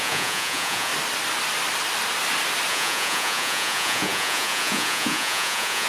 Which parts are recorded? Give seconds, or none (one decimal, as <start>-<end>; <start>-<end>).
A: 0.9-2.7